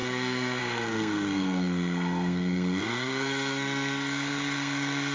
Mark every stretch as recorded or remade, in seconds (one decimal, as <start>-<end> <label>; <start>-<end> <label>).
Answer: 0.0-5.1 remade